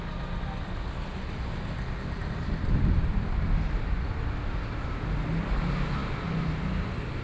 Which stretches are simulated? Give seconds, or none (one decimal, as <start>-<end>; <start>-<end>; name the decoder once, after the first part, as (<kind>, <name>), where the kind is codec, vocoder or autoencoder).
2.2-4.4 (vocoder, BigVGAN v2); 6.0-6.8